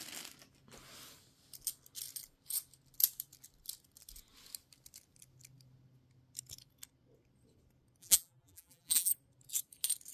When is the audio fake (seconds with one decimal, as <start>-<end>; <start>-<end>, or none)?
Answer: 8.0-9.1